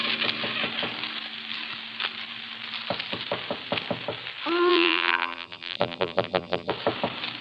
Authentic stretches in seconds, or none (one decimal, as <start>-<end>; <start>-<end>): 0.0-4.7; 6.7-7.4